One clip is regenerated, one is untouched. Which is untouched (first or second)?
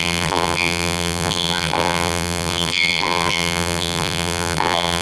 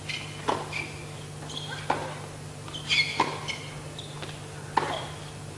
second